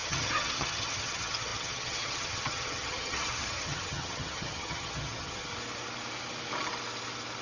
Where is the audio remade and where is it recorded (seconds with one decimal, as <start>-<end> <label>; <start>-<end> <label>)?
0.0-5.5 remade; 5.5-7.4 recorded